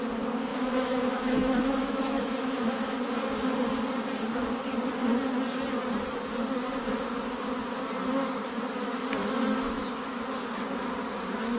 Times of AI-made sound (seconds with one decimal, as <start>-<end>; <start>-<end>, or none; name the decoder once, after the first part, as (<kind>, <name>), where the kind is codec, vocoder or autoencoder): 0.5-2.9 (autoencoder, DAC-VAE); 9.2-10.2